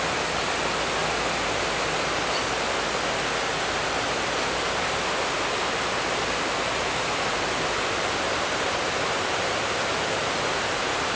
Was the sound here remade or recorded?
recorded